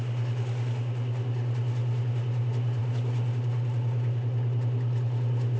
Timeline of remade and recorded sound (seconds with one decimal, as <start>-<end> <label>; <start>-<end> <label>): 0.0-5.6 recorded